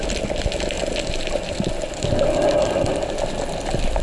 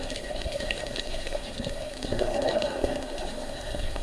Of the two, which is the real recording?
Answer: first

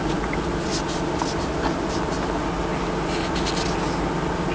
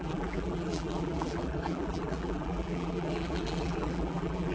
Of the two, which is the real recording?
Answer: first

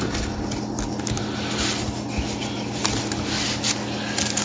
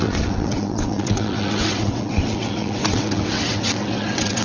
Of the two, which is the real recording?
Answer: first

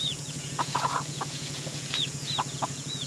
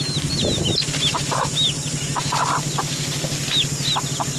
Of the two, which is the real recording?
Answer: second